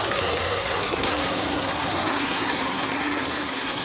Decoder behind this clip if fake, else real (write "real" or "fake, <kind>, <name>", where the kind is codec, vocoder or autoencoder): fake, codec, SNAC